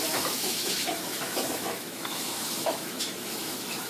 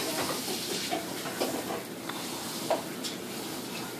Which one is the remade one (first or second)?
first